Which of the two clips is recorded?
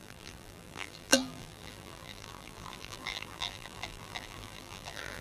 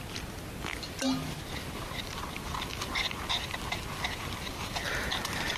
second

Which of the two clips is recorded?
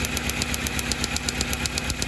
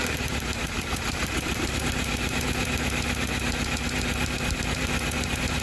first